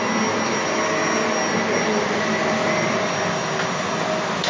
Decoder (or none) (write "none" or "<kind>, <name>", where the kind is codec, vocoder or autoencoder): none